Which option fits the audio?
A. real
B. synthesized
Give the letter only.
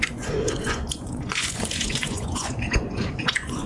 B